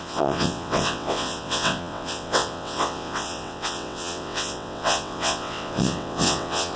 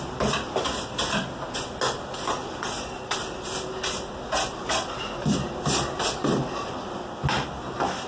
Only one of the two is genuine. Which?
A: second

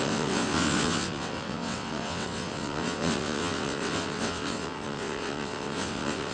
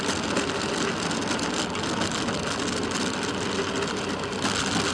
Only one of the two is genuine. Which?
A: second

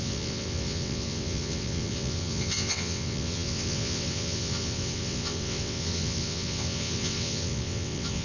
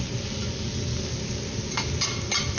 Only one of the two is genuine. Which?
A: second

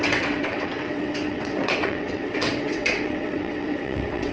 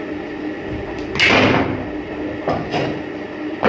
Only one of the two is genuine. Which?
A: second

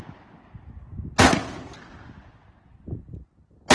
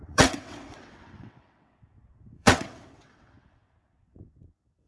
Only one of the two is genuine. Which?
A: first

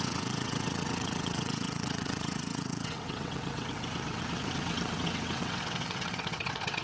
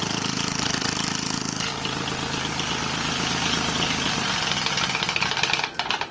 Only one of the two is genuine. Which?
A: second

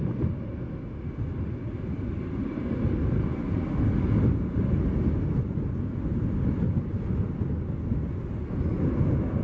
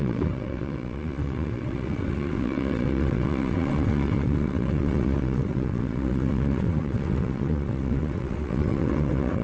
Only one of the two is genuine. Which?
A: first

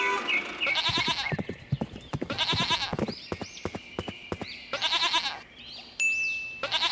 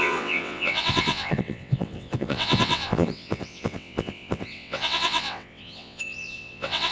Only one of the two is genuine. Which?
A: first